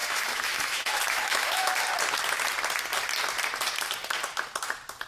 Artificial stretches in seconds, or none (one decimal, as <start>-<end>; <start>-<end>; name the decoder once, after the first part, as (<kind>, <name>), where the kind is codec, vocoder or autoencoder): 0.0-1.7 (autoencoder, DAC-VAE)